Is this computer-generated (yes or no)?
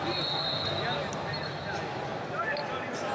no